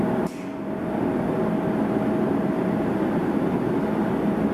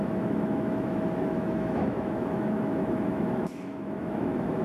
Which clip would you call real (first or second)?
first